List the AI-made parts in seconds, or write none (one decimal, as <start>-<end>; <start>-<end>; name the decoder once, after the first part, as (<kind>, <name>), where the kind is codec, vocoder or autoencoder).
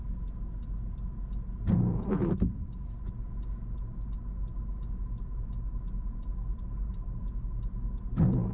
6.5-7.2 (vocoder, BigVGAN v2)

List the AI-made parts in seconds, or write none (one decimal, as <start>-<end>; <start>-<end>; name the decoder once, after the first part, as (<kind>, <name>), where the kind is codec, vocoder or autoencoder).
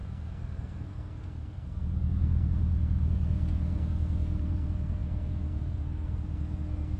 0.0-7.0 (codec, SNAC)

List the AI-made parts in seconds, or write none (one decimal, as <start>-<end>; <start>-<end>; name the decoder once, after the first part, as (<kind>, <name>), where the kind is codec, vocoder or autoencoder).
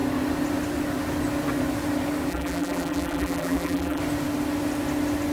2.3-4.0 (vocoder, BigVGAN v2)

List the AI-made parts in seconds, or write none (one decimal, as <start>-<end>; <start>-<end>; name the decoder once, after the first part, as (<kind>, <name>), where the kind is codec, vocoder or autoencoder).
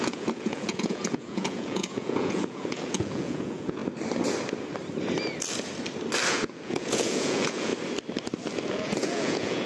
0.0-3.8 (vocoder, Vocos); 6.3-7.7; 8.7-9.7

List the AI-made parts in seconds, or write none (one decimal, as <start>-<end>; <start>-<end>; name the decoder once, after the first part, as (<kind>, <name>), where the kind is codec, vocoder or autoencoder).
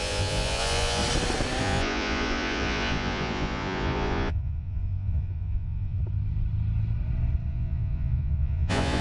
0.0-1.0 (vocoder, Vocos); 1.6-6.0; 7.5-9.0